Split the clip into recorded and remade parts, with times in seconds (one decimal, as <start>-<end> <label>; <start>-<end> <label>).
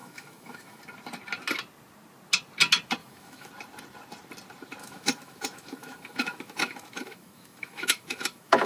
0.0-0.8 remade; 0.8-3.0 recorded; 3.0-3.5 remade; 3.5-4.8 recorded; 4.8-8.7 remade